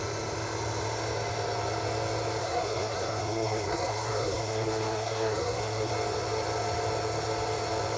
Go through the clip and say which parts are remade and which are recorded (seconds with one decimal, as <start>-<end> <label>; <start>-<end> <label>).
0.0-2.4 recorded; 2.4-5.9 remade; 5.9-8.0 recorded